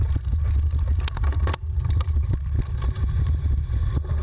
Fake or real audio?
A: real